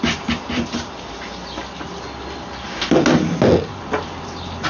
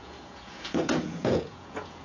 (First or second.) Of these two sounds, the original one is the first